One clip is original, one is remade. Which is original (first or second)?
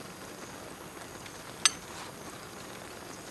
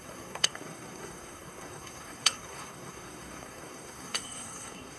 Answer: first